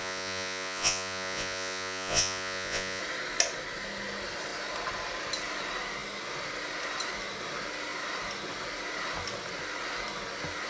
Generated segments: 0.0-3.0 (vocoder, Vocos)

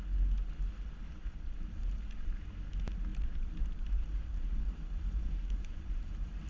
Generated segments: 1.2-2.4 (vocoder, BigVGAN v2); 3.1-6.1

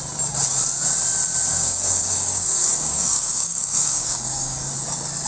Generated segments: 1.5-4.7 (codec, DAC)